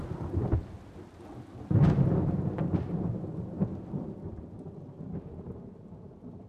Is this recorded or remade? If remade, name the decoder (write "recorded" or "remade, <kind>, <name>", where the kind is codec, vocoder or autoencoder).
recorded